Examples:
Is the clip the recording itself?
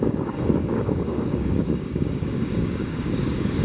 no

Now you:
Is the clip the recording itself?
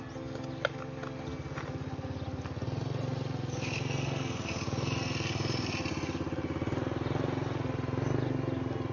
yes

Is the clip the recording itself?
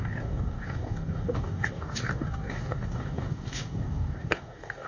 no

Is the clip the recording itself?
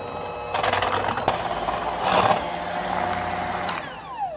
yes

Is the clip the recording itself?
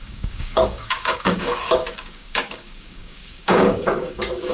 no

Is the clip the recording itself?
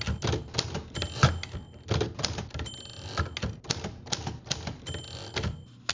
yes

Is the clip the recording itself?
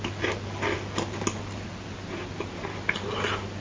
yes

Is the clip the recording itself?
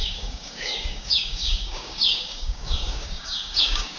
no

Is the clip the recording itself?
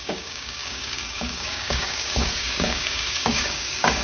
no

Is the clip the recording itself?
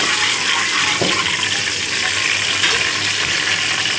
yes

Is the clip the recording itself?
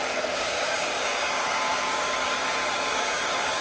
no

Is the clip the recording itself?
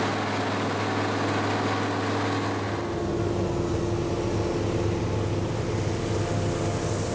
yes